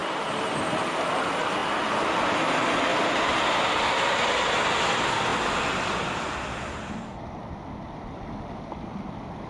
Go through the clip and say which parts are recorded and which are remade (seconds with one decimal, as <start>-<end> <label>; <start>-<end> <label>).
0.0-9.5 recorded